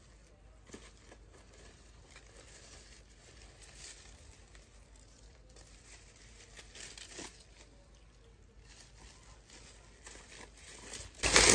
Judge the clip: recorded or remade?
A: recorded